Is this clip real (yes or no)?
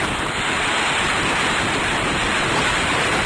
yes